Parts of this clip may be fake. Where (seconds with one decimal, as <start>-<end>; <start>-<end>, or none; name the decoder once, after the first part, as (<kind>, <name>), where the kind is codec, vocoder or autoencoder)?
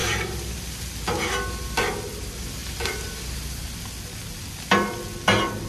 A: 0.0-0.5 (vocoder, BigVGAN v2)